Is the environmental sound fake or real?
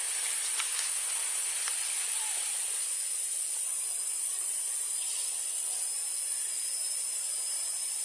real